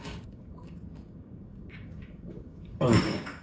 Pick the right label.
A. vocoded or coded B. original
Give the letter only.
A